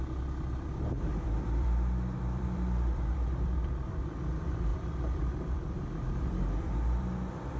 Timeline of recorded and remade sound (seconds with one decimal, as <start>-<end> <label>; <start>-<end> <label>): 0.0-7.6 remade